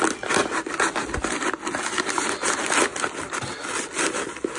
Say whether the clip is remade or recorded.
recorded